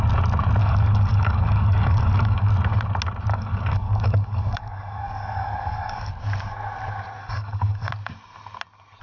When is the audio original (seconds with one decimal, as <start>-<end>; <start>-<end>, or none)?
0.0-0.6; 2.5-3.3; 6.1-7.2; 7.9-9.0